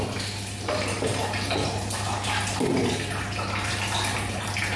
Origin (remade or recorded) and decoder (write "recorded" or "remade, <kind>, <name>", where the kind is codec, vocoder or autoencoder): recorded